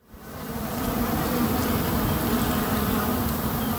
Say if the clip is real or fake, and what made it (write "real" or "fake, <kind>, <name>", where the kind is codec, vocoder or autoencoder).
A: real